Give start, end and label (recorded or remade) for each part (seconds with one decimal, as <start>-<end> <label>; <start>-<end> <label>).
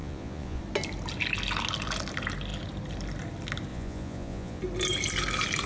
0.0-0.6 remade; 0.6-3.7 recorded; 3.7-4.6 remade; 4.6-5.7 recorded